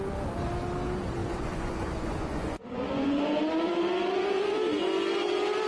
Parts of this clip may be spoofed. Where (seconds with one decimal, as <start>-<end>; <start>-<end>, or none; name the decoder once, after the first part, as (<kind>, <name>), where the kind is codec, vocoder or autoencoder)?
1.2-3.8 (vocoder, Vocos)